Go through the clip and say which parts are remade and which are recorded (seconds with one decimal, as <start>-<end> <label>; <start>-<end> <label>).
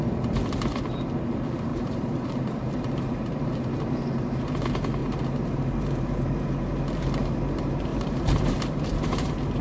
0.0-1.7 recorded; 1.7-4.5 remade; 4.5-5.0 recorded; 5.0-6.6 remade; 6.6-7.9 recorded; 7.9-9.6 remade